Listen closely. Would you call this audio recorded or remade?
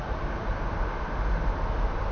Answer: recorded